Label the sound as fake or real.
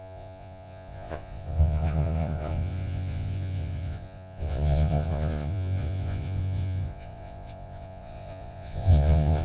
fake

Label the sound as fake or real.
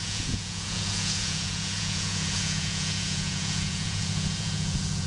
fake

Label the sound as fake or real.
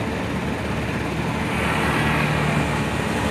real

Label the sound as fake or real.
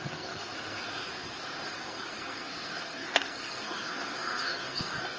fake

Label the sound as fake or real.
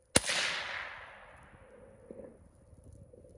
real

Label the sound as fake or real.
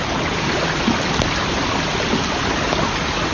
real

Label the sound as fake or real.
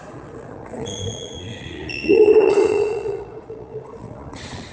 fake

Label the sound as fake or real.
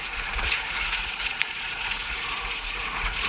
fake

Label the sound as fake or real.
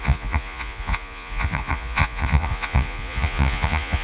fake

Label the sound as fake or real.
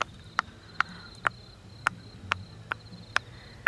real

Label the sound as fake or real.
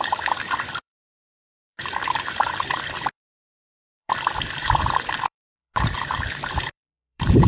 fake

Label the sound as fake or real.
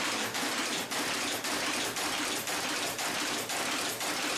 real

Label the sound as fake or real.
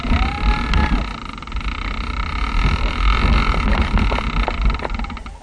real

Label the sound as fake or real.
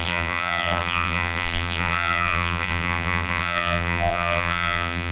fake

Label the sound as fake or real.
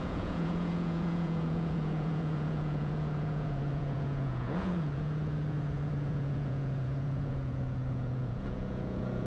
fake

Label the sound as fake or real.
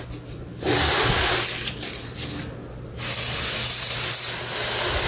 real